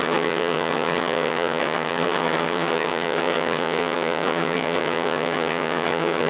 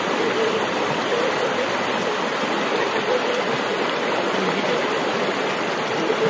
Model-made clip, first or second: first